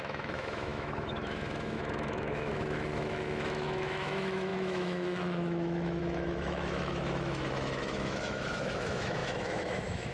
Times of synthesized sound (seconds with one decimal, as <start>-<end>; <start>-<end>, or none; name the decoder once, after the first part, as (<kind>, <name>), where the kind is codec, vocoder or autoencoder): 0.0-10.1 (autoencoder, DAC-VAE)